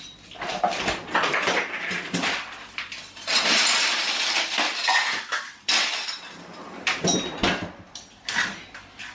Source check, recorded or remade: remade